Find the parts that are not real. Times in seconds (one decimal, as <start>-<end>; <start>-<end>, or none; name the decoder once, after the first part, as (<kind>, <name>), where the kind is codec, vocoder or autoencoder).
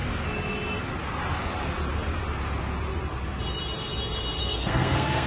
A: 4.4-5.3 (codec, SNAC)